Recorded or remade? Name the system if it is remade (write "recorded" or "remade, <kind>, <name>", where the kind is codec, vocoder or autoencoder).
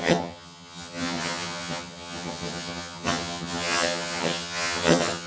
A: remade, vocoder, HiFi-GAN